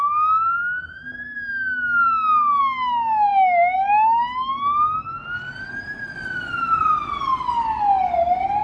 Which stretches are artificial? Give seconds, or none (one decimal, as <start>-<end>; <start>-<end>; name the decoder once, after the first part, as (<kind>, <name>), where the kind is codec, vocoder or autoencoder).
none